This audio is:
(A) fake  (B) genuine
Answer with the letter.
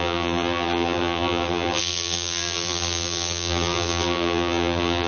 A